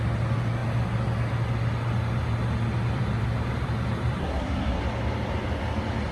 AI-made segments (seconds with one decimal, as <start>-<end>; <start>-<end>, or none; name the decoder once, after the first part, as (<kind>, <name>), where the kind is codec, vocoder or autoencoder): 4.2-4.8 (codec, SNAC)